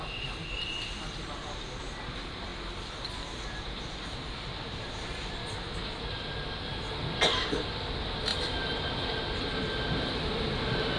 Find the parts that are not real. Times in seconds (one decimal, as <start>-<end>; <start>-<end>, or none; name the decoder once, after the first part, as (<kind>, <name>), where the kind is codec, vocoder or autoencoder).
none